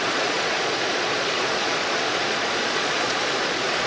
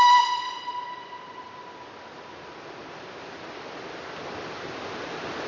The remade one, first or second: first